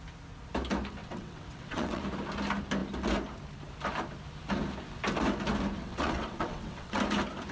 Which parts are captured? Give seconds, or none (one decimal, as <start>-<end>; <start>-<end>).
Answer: 0.0-1.0; 2.0-5.8; 7.0-7.5